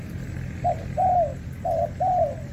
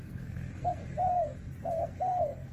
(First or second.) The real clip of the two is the first